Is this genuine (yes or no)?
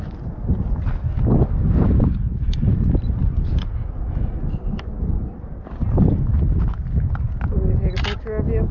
yes